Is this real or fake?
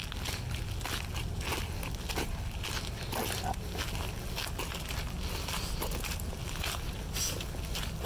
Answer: real